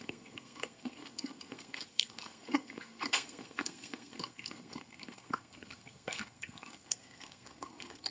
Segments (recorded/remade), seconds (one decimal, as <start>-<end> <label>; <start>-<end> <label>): 0.0-8.1 remade